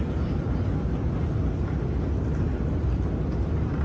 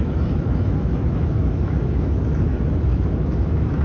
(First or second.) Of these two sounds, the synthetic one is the second